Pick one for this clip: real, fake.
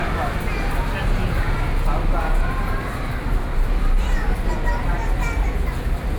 real